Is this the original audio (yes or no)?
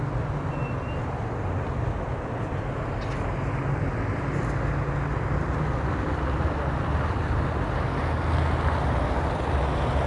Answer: yes